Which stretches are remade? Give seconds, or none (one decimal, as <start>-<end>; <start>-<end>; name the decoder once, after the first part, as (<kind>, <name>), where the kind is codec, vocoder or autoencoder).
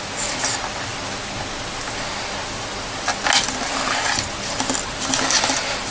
none